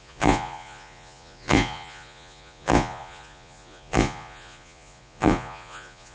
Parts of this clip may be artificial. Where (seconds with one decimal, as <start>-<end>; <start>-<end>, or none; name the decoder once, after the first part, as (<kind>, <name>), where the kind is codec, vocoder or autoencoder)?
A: 0.0-6.1 (vocoder, Vocos)